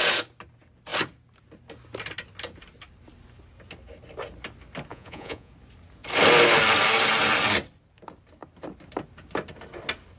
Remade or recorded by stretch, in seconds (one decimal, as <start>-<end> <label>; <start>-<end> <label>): 0.0-4.9 recorded; 4.9-5.5 remade; 5.5-10.2 recorded